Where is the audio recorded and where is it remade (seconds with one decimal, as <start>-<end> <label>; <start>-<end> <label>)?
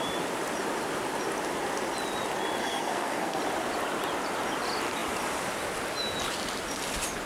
0.0-2.6 recorded; 2.6-3.4 remade; 3.4-7.3 recorded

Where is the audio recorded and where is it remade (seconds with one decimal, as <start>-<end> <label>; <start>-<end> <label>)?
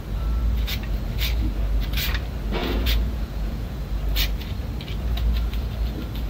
0.0-2.6 recorded; 2.6-3.8 remade; 3.8-6.3 recorded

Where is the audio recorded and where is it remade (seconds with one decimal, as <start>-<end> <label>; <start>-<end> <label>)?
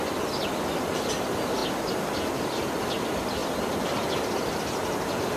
0.0-5.4 recorded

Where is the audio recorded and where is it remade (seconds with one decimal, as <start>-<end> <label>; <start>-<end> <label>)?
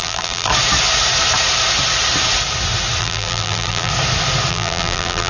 0.0-0.5 remade; 0.5-3.0 recorded; 3.0-3.9 remade; 3.9-4.5 recorded; 4.5-5.3 remade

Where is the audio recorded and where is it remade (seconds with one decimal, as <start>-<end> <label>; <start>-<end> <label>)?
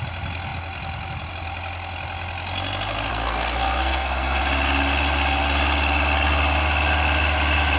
0.0-3.1 recorded; 3.1-4.4 remade; 4.4-7.8 recorded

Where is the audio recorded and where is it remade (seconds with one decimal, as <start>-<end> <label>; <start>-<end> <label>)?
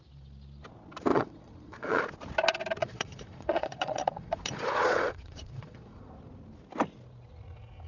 0.0-1.1 recorded; 1.1-2.0 remade; 2.0-2.8 recorded; 2.8-6.1 remade; 6.1-7.9 recorded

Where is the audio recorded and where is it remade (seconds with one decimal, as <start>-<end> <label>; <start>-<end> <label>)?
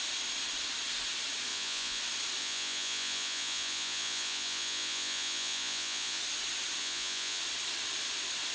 0.0-1.5 recorded; 1.5-2.0 remade; 2.0-2.4 recorded; 2.4-6.2 remade; 6.2-6.8 recorded; 6.8-7.4 remade; 7.4-8.5 recorded